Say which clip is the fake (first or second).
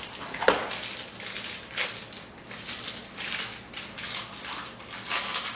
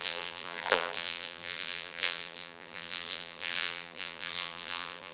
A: second